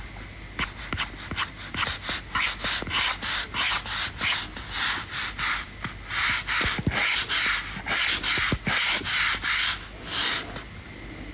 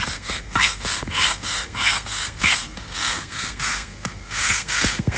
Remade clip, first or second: second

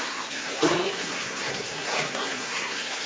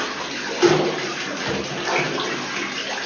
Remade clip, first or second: first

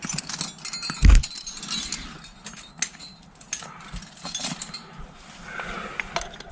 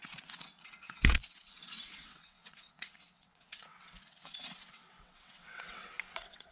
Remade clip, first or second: second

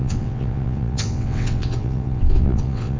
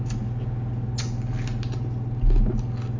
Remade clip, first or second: first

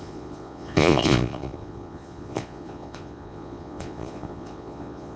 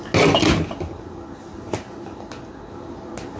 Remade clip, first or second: first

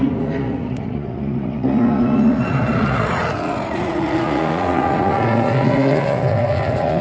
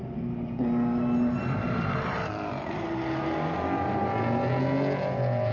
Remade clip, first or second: first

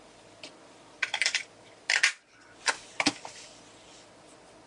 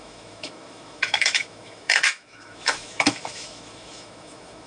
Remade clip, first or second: second